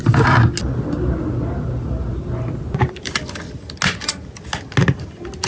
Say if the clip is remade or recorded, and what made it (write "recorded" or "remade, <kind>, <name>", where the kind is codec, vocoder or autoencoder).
recorded